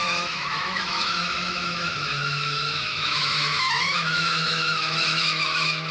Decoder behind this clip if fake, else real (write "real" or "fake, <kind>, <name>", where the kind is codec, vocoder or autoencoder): fake, autoencoder, DAC-VAE